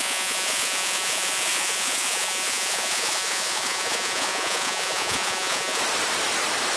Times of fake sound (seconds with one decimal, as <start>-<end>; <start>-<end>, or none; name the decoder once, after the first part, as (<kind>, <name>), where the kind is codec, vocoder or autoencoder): 0.0-5.8 (vocoder, Vocos)